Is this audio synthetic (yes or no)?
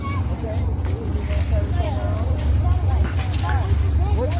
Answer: no